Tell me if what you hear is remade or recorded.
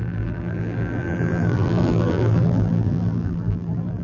remade